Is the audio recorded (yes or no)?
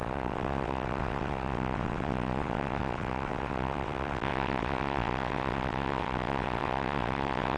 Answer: no